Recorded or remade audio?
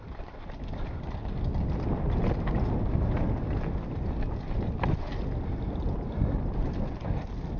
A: recorded